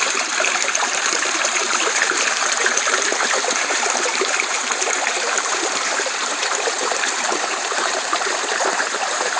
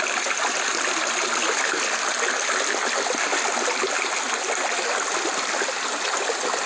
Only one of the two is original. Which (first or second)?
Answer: second